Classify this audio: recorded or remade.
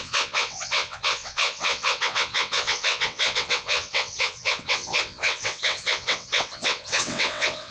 remade